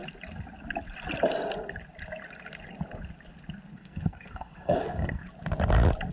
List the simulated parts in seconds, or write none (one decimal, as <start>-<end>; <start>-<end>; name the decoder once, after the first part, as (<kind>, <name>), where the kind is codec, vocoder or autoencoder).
3.7-5.2 (codec, SNAC)